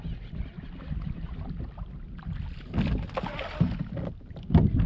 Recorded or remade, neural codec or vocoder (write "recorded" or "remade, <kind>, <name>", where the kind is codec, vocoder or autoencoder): recorded